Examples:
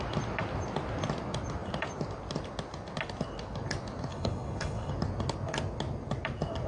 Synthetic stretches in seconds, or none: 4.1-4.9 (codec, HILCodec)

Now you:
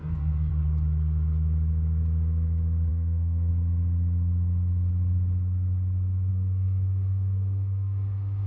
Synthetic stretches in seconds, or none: 0.0-0.5 (codec, SNAC); 2.9-3.5; 6.3-8.5

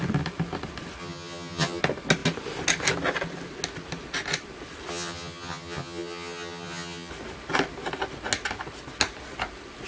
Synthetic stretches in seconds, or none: 1.0-1.8 (vocoder, HiFi-GAN); 4.9-7.1

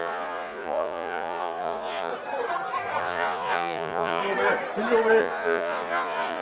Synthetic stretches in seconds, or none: 0.0-2.1 (vocoder, Vocos); 3.0-4.2; 5.2-6.4

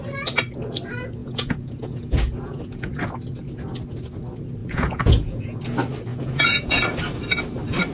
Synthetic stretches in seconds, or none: 1.2-3.0 (vocoder, Vocos); 4.6-5.6; 6.1-6.8

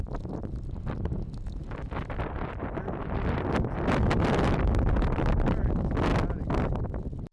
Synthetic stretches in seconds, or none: 0.0-6.1 (vocoder, BigVGAN v2); 6.7-7.3

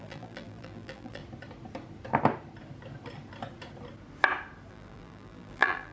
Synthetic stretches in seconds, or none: 0.0-1.2 (vocoder, BigVGAN v2); 4.7-5.9

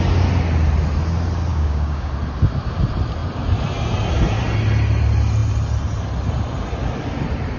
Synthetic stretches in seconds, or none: 1.5-2.1 (codec, DAC)